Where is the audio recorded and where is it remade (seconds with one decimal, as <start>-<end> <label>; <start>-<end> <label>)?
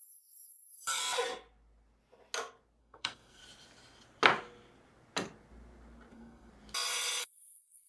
0.0-1.0 remade; 1.0-2.8 recorded; 2.8-3.4 remade; 3.4-6.1 recorded; 6.1-6.5 remade; 6.5-7.2 recorded; 7.2-7.9 remade